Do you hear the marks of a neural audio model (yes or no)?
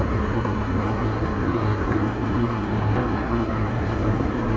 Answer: yes